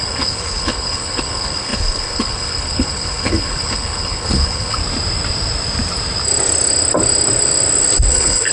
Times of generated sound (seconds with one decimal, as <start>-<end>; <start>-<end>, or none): 0.0-4.8; 8.1-8.5